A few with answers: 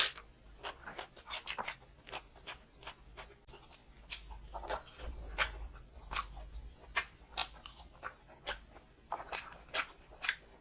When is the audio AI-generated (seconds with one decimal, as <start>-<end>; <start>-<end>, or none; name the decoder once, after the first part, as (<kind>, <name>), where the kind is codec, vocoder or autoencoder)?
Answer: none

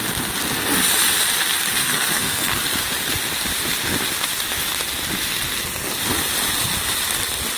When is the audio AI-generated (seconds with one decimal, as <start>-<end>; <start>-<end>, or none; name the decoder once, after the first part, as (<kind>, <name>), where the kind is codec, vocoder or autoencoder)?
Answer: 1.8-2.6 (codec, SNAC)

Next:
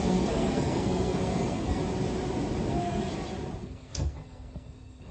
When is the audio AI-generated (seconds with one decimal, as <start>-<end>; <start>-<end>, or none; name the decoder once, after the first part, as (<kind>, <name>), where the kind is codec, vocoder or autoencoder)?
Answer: 0.0-1.8 (codec, SNAC); 2.7-3.1; 3.6-5.1

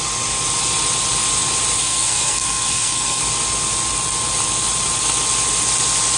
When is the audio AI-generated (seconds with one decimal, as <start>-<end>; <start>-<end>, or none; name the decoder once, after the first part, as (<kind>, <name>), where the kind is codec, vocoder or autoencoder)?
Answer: 1.8-3.2 (codec, SNAC)